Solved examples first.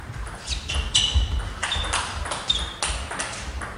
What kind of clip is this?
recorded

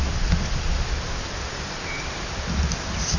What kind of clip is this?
recorded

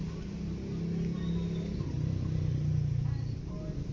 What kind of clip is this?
recorded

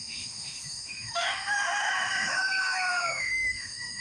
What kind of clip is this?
remade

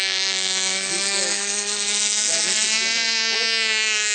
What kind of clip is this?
remade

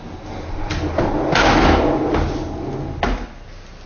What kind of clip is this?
recorded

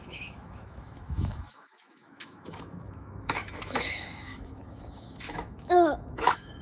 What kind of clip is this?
remade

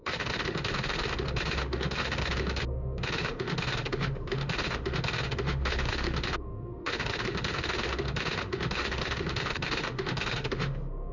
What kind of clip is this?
remade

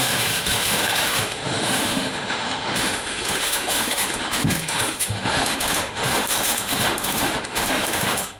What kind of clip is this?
remade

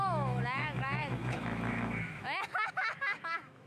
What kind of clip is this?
remade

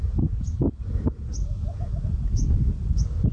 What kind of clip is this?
recorded